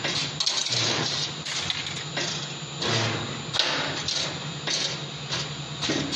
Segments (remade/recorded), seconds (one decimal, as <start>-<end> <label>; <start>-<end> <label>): 0.0-0.6 recorded; 0.6-1.5 remade; 1.5-6.2 recorded